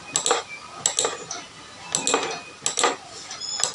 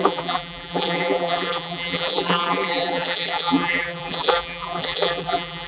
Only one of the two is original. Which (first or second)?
first